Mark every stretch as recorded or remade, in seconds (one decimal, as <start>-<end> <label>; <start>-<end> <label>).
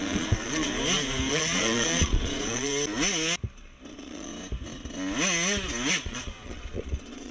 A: 0.0-0.7 remade; 0.7-1.3 recorded; 1.3-2.7 remade; 2.7-3.9 recorded; 3.9-4.3 remade; 4.3-5.9 recorded; 5.9-7.3 remade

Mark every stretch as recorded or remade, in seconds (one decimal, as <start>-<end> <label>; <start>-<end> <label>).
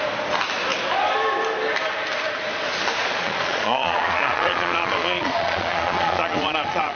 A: 0.0-3.0 recorded; 3.0-7.0 remade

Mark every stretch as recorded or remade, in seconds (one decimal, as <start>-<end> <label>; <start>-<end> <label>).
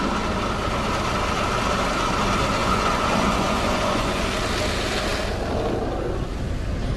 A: 0.0-2.6 recorded; 2.6-4.2 remade; 4.2-7.0 recorded